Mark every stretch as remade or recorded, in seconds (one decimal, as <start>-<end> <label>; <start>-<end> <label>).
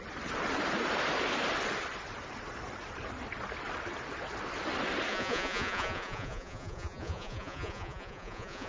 0.0-5.1 recorded; 5.1-8.7 remade